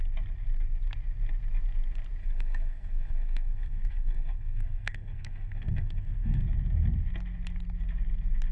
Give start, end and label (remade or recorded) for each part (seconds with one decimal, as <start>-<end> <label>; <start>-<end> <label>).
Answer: 0.0-2.2 recorded; 2.2-6.4 remade; 6.4-8.5 recorded